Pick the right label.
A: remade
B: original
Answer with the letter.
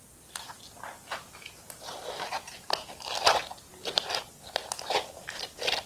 B